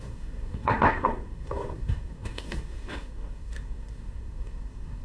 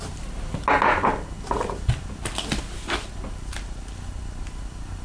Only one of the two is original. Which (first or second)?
second